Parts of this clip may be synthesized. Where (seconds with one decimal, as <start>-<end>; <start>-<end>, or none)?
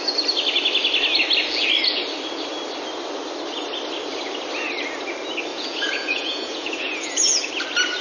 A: 5.5-7.5